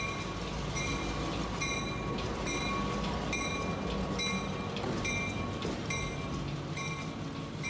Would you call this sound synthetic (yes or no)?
no